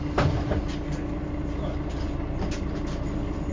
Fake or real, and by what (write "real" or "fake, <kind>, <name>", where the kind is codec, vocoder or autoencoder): real